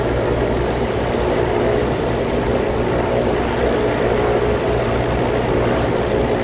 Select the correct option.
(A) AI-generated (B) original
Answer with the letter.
B